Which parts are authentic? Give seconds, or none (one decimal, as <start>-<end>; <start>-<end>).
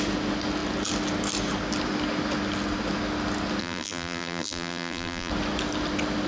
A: 0.0-3.6; 5.3-6.3